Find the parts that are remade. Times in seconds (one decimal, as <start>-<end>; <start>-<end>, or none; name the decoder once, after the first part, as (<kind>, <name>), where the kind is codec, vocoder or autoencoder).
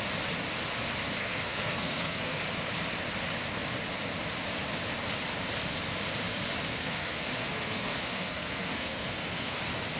1.2-2.4 (codec, SNAC); 6.7-9.6